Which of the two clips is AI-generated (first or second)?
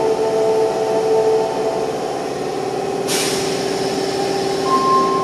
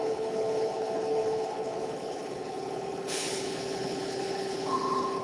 second